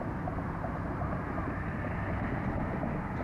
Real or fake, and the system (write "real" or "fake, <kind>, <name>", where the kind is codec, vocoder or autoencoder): real